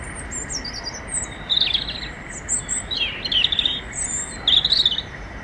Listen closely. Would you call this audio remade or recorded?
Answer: recorded